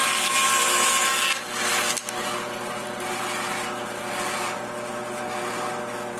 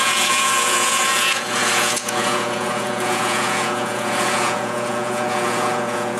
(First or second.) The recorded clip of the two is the first